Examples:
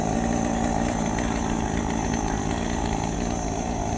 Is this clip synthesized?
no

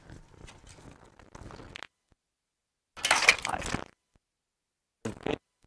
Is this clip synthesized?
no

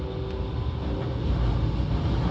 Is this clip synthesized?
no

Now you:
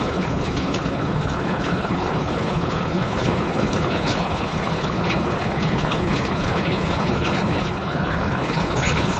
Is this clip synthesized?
yes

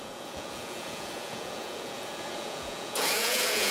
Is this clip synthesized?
yes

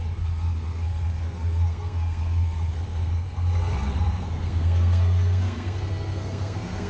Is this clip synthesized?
yes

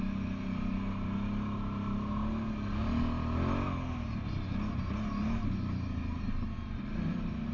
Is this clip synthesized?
no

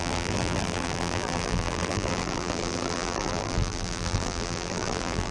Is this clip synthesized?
yes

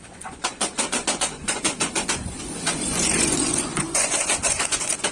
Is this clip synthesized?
yes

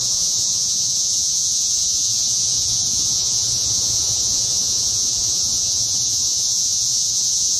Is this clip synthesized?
yes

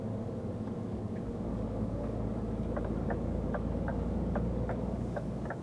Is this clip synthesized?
yes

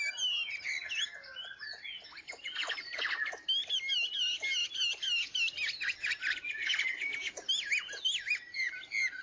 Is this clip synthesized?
no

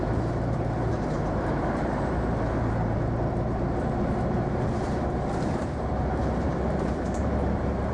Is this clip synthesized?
yes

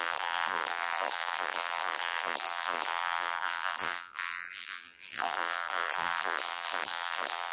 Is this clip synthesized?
yes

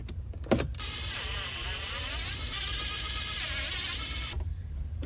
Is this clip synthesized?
yes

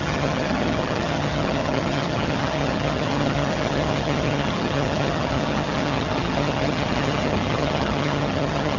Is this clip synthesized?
yes